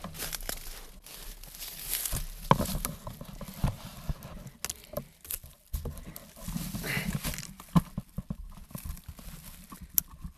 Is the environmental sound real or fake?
real